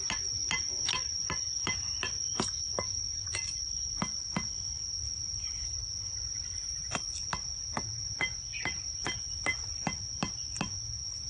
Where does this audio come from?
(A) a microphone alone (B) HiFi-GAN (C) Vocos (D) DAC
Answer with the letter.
A